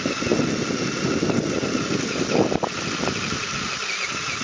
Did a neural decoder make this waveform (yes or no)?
no